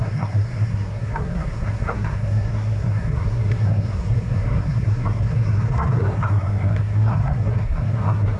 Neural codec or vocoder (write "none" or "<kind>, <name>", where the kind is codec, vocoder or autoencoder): codec, SNAC